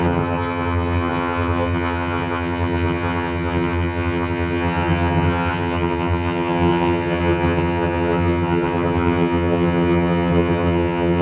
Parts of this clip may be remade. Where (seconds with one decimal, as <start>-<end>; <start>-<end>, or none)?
0.0-11.2